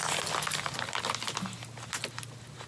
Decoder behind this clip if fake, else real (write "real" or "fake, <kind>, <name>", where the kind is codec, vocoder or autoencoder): real